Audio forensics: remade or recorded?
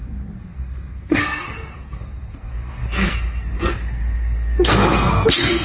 remade